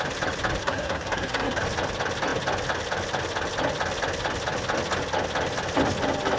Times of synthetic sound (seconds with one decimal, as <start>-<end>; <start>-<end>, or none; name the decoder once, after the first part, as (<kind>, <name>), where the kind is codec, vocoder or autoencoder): 0.6-1.6 (codec, SNAC)